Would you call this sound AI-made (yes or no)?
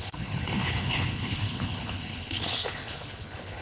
yes